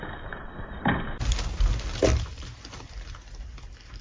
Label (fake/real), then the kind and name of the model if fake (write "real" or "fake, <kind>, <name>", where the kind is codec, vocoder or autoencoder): real